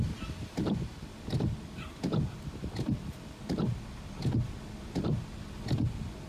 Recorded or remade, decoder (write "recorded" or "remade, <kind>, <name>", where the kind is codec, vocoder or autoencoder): recorded